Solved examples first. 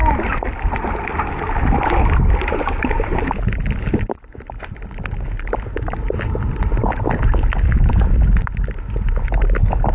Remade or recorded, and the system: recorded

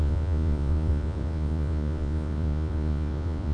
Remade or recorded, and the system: remade, vocoder, Vocos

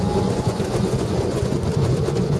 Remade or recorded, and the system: remade, vocoder, Vocos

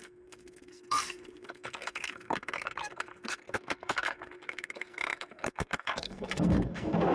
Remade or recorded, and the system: remade, codec, SNAC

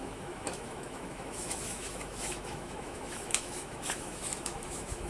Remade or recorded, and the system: remade, autoencoder, DAC-VAE